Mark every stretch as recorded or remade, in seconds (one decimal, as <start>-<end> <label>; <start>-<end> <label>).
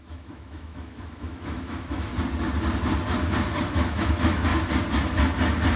0.0-2.1 remade; 2.1-3.7 recorded; 3.7-4.5 remade; 4.5-5.8 recorded